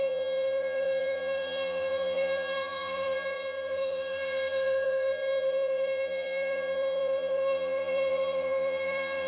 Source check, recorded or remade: remade